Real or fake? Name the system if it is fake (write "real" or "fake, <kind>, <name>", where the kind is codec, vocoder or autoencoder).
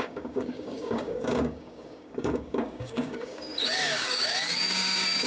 fake, codec, DAC